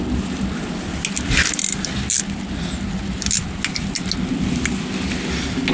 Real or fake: real